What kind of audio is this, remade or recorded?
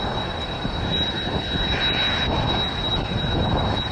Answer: recorded